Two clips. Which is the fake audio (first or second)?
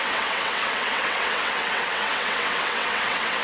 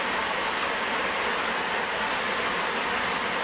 first